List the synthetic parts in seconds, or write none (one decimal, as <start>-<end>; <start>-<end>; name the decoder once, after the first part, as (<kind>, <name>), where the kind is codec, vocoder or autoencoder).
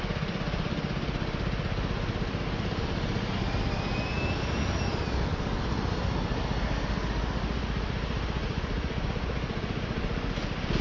8.4-9.1 (vocoder, Vocos)